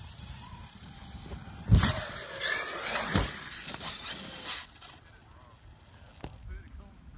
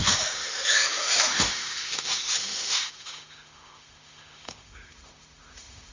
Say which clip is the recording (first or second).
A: first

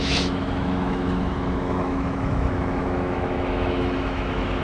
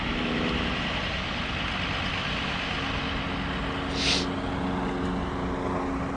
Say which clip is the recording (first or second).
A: second